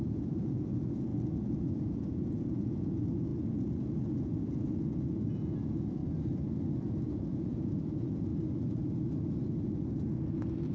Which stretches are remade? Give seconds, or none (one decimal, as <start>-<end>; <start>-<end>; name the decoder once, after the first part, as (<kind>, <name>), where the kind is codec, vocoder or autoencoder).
0.0-3.3 (vocoder, Vocos); 4.2-6.0; 7.3-8.3